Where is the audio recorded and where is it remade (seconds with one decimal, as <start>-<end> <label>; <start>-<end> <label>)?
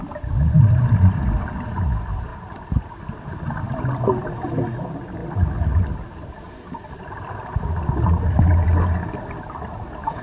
0.0-10.2 recorded